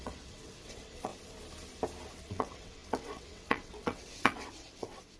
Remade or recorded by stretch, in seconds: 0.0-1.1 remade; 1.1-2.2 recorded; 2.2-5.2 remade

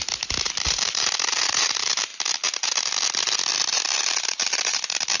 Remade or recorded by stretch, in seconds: 0.0-2.1 remade; 2.1-4.2 recorded; 4.2-5.2 remade

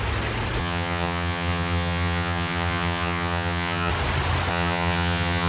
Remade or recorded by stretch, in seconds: 0.0-0.6 recorded; 0.6-3.9 remade; 3.9-4.5 recorded; 4.5-5.5 remade